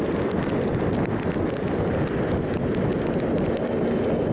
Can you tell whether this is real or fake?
real